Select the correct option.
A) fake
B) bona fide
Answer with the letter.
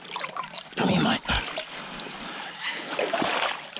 B